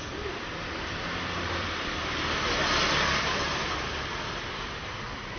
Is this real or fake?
fake